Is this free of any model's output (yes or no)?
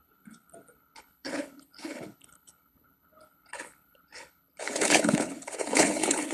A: no